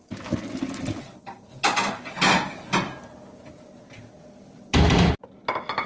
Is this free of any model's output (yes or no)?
yes